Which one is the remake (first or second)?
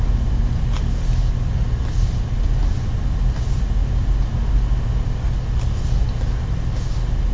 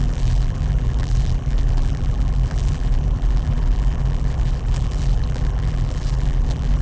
second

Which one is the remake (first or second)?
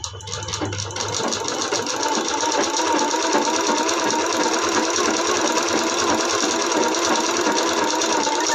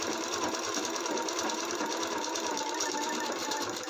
second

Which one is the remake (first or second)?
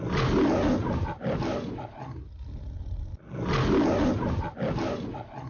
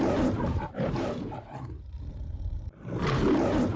second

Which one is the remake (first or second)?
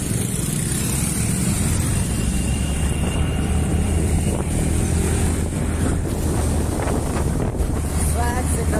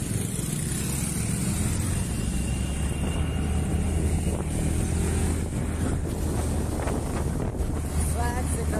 first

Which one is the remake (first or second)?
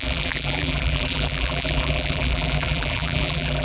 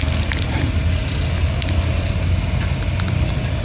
first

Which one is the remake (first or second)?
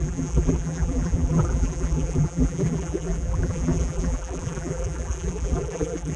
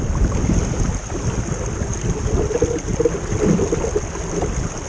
first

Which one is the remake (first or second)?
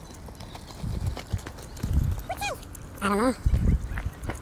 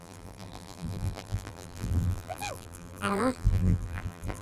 second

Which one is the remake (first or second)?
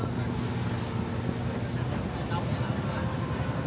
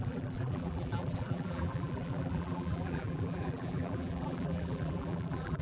second